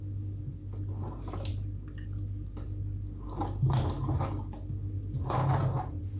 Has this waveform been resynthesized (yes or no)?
no